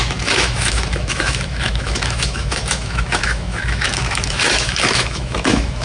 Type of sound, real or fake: fake